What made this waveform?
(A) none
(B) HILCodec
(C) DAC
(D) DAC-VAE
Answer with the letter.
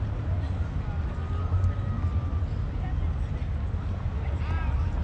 A